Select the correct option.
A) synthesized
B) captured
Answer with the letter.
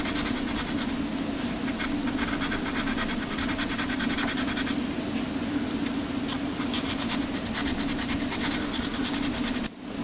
B